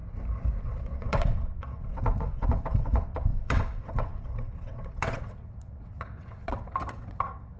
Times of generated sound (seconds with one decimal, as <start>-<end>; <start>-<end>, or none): 0.6-7.6